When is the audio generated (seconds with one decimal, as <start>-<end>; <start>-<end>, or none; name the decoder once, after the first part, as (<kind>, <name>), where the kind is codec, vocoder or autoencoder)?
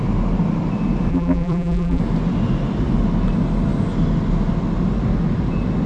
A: 1.1-2.0 (vocoder, BigVGAN v2)